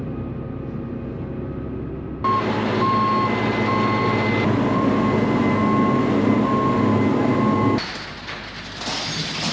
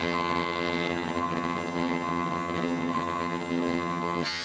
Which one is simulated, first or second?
second